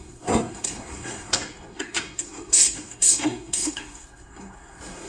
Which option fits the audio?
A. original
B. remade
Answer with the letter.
B